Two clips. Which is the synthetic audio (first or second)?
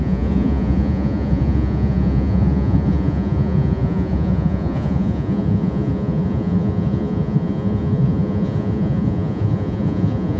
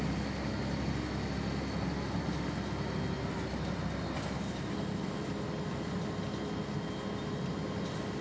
first